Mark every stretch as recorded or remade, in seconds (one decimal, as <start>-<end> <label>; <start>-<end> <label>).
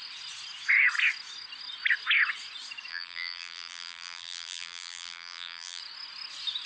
0.0-2.9 recorded; 2.9-5.8 remade; 5.8-6.7 recorded